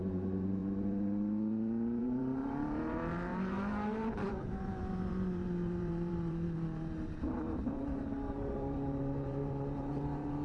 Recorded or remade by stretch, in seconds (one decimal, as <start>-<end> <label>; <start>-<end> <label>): 0.0-0.6 remade; 0.6-2.0 recorded; 2.0-10.4 remade